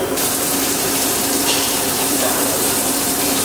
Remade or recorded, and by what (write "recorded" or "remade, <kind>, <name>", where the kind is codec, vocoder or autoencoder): remade, vocoder, BigVGAN v2